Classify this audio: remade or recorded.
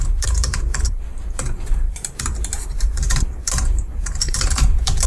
remade